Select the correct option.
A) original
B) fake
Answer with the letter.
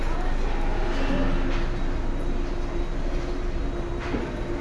A